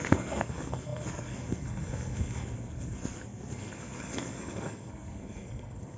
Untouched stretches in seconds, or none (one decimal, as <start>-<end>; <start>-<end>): none